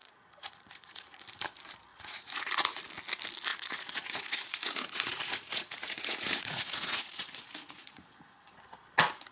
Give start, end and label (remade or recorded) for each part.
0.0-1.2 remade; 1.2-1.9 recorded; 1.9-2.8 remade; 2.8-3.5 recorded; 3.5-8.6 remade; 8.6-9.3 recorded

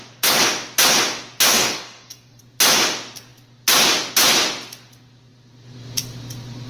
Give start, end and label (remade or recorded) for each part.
0.0-1.5 recorded; 1.5-2.4 remade; 2.4-6.7 recorded

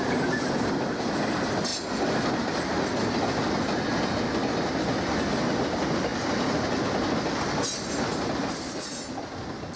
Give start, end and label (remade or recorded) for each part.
0.0-9.8 recorded

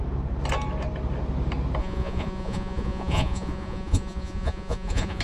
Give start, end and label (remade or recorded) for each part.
0.0-1.8 recorded; 1.8-5.2 remade

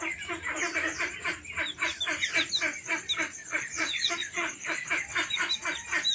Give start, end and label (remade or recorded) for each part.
0.0-3.4 recorded; 3.4-4.9 remade; 4.9-6.1 recorded

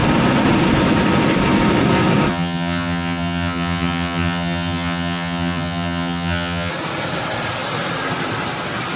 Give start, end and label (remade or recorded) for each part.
0.0-2.3 recorded; 2.3-6.7 remade; 6.7-9.0 recorded

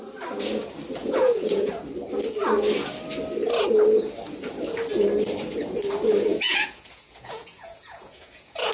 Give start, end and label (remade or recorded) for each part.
0.0-1.0 recorded; 1.0-1.7 remade; 1.7-6.3 recorded; 6.3-8.7 remade

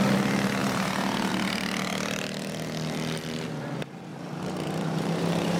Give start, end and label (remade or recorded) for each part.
0.0-0.6 recorded; 0.6-1.3 remade; 1.3-1.9 recorded; 1.9-2.5 remade; 2.5-4.1 recorded; 4.1-5.6 remade